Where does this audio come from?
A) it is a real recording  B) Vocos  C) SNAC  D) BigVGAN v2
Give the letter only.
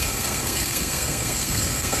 C